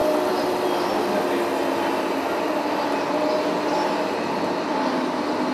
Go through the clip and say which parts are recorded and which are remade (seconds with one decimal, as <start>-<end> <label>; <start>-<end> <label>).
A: 0.0-5.5 recorded